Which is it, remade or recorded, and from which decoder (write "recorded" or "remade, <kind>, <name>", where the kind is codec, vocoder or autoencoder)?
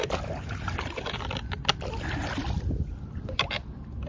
recorded